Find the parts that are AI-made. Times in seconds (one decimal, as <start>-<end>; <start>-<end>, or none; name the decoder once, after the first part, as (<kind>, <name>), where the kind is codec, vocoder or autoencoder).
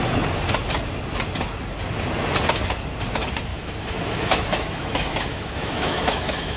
3.5-6.6 (autoencoder, DAC-VAE)